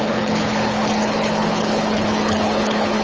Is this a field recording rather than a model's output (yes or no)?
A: no